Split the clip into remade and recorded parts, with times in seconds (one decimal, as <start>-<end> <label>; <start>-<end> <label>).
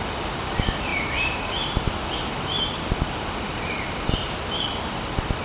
0.0-5.4 recorded